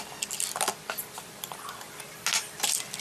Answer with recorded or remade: recorded